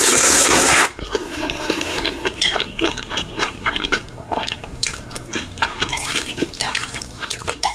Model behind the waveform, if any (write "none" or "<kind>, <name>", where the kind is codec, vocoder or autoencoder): codec, SNAC